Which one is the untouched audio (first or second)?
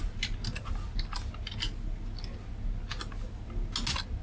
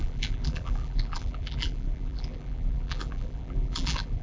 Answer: first